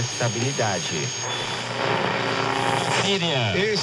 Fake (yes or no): no